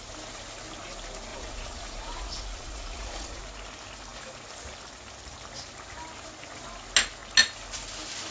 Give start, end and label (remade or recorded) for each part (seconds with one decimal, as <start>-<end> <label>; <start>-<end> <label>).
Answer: 0.0-1.3 recorded; 1.3-3.4 remade; 3.4-8.3 recorded